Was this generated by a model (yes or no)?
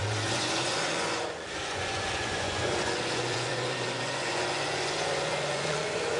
yes